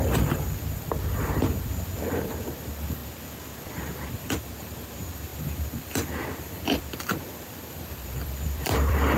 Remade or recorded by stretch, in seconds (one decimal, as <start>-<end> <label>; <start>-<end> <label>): 0.0-3.0 remade; 3.0-4.1 recorded; 4.1-9.2 remade